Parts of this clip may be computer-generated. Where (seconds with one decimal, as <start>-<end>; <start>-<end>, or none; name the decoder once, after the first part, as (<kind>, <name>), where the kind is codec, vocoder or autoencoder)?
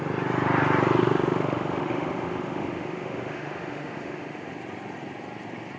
1.0-4.5 (autoencoder, DAC-VAE)